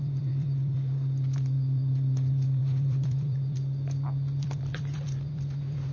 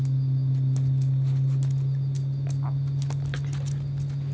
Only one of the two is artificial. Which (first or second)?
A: first